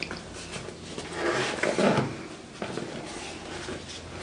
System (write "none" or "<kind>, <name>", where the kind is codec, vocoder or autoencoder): none